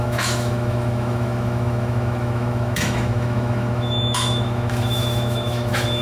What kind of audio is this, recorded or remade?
remade